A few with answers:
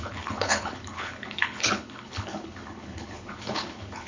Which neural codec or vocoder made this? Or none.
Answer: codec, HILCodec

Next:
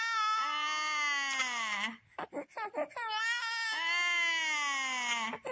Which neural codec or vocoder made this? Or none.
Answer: none